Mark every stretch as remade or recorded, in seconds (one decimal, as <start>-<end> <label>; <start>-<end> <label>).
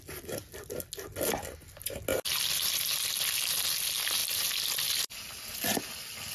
0.0-6.3 recorded